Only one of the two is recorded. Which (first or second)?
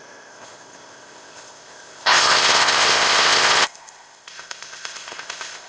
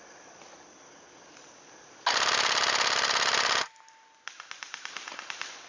second